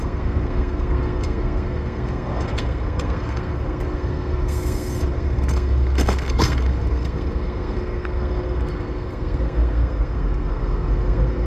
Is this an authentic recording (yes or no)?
no